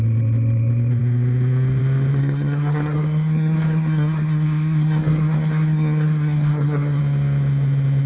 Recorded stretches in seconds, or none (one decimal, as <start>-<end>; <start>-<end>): 0.0-2.2; 7.0-8.1